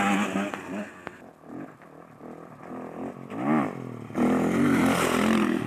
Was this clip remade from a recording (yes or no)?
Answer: no